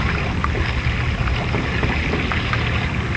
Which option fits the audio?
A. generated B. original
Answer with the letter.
B